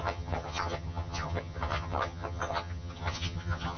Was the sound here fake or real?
fake